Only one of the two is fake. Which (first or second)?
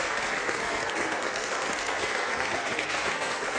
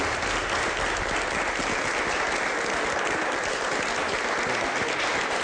first